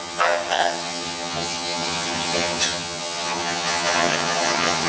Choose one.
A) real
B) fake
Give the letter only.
B